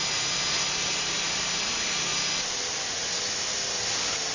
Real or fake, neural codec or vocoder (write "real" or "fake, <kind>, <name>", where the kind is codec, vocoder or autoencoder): real